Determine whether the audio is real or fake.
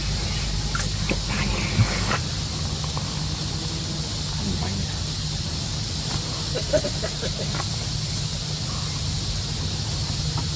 real